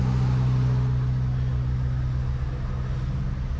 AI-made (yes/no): no